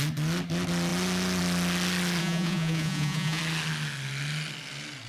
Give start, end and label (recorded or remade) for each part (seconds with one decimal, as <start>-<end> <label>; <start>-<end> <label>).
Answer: 0.0-2.2 recorded; 2.2-3.4 remade; 3.4-5.1 recorded